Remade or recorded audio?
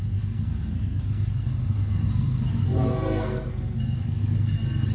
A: remade